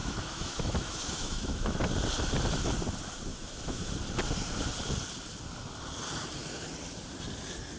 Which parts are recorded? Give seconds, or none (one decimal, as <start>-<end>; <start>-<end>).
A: 1.9-3.3; 3.9-7.8